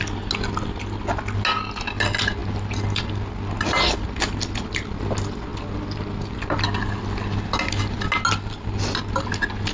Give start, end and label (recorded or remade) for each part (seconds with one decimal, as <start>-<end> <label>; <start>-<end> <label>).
0.0-9.7 recorded